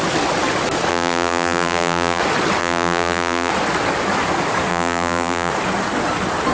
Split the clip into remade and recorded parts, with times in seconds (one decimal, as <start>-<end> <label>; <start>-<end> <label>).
0.0-0.9 recorded; 0.9-2.2 remade; 2.2-2.6 recorded; 2.6-3.5 remade; 3.5-4.7 recorded; 4.7-5.5 remade; 5.5-6.5 recorded